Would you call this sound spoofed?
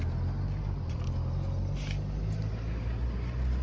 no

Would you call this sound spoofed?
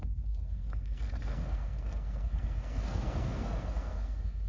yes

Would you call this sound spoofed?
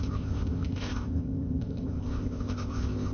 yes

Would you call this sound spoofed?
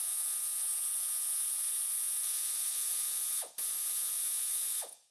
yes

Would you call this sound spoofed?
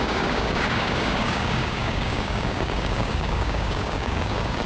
yes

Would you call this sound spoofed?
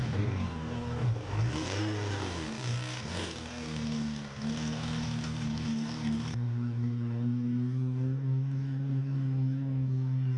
yes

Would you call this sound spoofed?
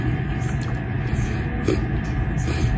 no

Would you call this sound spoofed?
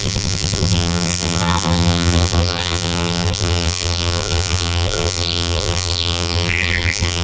yes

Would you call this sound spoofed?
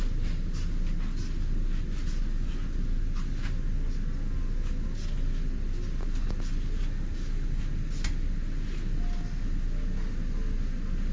no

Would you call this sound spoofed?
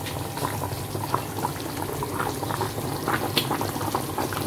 no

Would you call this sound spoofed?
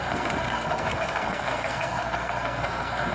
yes